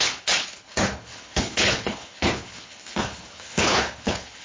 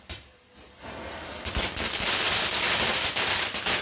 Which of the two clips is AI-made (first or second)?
first